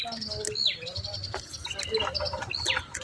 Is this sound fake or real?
real